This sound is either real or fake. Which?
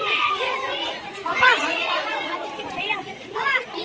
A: fake